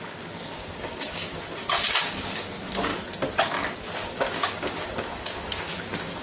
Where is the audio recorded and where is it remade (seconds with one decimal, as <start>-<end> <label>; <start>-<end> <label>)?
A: 0.0-1.3 remade; 1.3-1.9 recorded; 1.9-2.9 remade; 2.9-4.1 recorded; 4.1-6.2 remade